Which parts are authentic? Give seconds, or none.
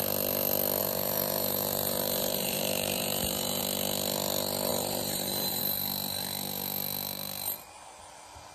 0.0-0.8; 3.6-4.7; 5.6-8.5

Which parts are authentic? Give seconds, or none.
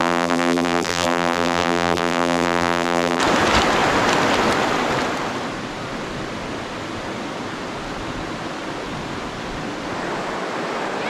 3.2-11.1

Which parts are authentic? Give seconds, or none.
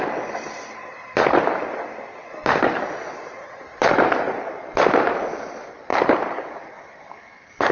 2.2-2.8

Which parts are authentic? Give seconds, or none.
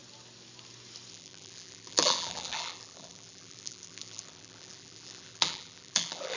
0.0-1.1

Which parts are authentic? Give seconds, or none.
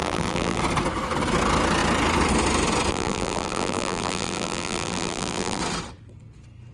0.6-2.9; 5.6-6.7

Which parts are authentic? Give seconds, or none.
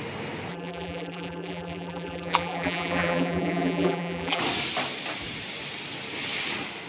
0.0-0.5; 4.4-6.9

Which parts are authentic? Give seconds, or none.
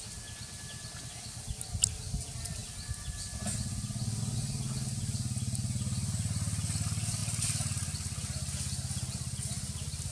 0.0-10.1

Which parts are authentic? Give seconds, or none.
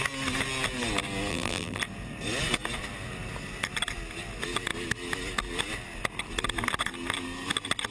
0.0-1.3; 1.8-7.9